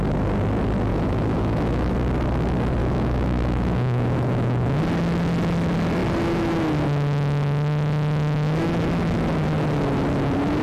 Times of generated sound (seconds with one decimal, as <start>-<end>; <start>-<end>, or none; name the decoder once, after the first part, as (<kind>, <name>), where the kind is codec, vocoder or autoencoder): 0.9-1.9 (autoencoder, DAC-VAE); 2.8-4.8